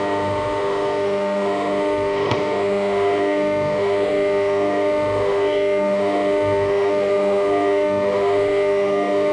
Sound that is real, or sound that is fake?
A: fake